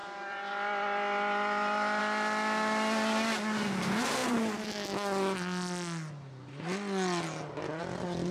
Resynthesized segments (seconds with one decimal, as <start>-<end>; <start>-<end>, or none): 0.0-2.0